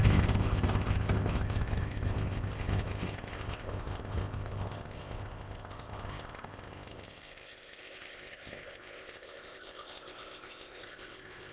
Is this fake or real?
fake